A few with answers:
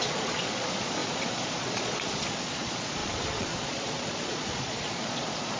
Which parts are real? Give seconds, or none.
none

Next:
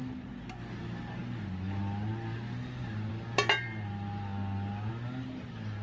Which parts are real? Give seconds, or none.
0.0-5.8

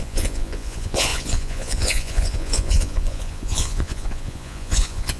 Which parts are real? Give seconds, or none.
none

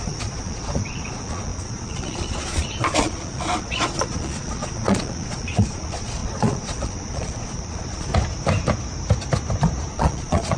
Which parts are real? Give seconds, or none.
8.1-9.9

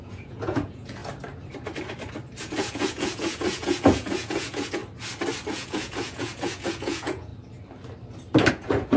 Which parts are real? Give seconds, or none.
1.0-2.4; 4.8-5.5; 7.3-8.5

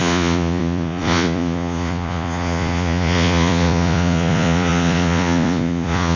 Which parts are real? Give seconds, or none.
none

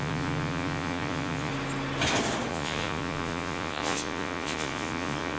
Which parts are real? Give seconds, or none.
1.5-2.5